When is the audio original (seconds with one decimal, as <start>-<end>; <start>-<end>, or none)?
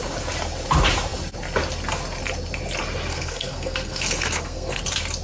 0.0-3.1; 4.8-5.2